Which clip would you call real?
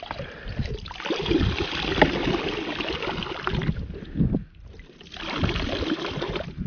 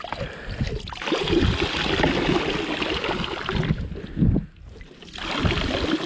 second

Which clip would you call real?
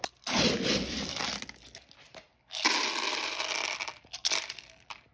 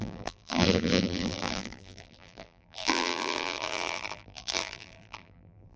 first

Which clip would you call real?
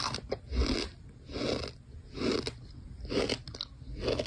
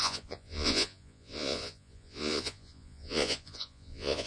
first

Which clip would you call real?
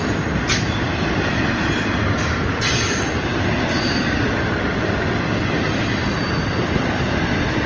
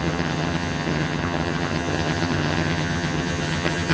first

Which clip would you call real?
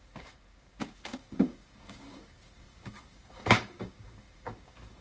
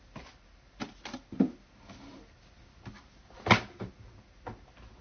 second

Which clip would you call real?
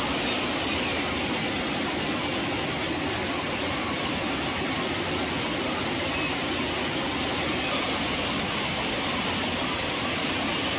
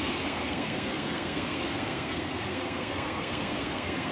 first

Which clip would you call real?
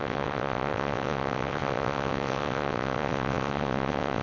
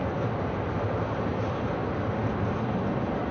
second